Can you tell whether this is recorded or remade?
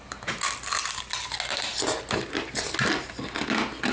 recorded